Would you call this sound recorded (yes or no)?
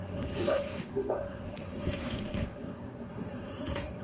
no